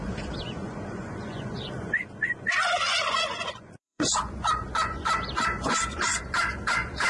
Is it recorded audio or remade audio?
remade